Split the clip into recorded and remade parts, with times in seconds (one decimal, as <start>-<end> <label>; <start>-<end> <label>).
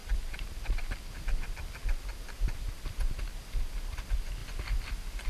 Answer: 0.0-5.3 recorded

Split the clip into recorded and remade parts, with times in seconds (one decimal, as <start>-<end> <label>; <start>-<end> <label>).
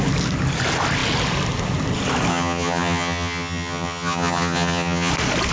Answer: 0.0-2.3 recorded; 2.3-5.1 remade; 5.1-5.5 recorded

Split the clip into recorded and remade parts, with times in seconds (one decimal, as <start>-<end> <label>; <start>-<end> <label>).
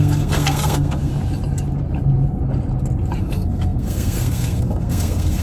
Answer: 0.0-1.1 remade; 1.1-3.2 recorded; 3.2-5.4 remade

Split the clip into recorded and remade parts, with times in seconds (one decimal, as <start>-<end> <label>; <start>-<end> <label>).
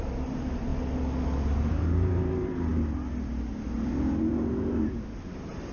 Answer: 0.0-0.7 remade; 0.7-1.6 recorded; 1.6-5.7 remade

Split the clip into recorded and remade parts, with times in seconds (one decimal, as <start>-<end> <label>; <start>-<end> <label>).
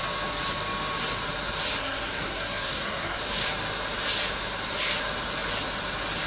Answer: 0.0-1.8 recorded; 1.8-3.2 remade; 3.2-6.3 recorded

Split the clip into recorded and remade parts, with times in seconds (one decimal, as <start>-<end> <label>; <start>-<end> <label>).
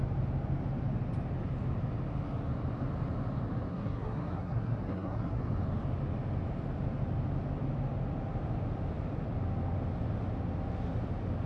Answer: 0.0-3.7 recorded; 3.7-5.4 remade; 5.4-11.5 recorded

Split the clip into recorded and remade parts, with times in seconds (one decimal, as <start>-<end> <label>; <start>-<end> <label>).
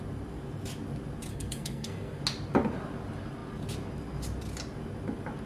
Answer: 0.0-1.3 recorded; 1.3-2.2 remade; 2.2-5.5 recorded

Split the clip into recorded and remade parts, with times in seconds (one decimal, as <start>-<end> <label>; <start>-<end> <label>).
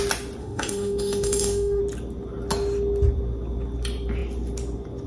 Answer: 0.0-0.4 recorded; 0.4-1.8 remade; 1.8-5.1 recorded